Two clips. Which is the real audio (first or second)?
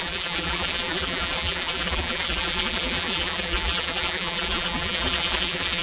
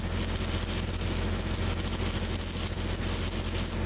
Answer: second